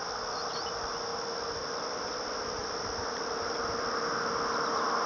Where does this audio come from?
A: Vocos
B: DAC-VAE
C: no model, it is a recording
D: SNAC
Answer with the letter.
C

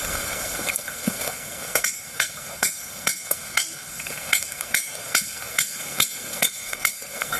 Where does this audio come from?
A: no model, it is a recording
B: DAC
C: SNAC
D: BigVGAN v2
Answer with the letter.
C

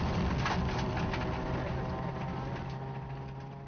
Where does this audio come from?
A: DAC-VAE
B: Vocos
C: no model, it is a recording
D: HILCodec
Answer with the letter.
C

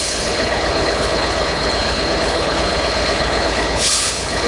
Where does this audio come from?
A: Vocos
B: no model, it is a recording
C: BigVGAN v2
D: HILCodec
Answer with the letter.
D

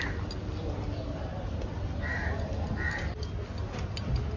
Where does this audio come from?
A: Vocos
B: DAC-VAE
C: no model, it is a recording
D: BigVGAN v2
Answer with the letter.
C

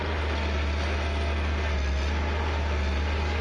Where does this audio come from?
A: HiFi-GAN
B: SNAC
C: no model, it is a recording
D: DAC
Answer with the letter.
C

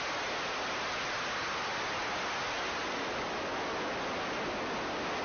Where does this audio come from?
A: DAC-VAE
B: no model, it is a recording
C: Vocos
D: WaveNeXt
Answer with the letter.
B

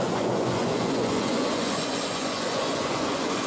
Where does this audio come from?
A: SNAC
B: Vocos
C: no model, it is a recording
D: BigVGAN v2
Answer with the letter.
B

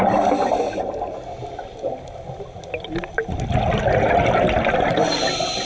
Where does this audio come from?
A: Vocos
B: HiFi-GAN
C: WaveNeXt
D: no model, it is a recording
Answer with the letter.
D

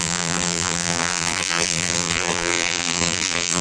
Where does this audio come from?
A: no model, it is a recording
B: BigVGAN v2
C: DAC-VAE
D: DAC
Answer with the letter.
B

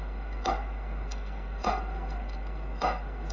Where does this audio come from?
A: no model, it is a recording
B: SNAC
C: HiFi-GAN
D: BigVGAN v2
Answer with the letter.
B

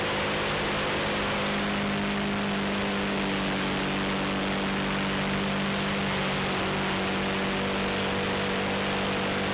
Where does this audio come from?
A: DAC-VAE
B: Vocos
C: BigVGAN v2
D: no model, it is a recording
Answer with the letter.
D